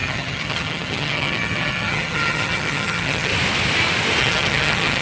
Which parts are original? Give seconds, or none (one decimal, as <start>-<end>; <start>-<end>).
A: 3.3-4.2